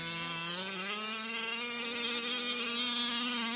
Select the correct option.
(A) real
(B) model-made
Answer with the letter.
A